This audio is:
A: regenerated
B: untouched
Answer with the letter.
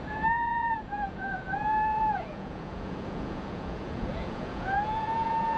A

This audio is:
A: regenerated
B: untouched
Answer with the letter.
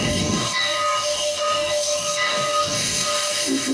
A